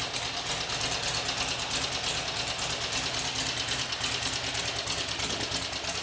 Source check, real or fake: real